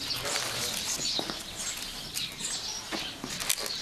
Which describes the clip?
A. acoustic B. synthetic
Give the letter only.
A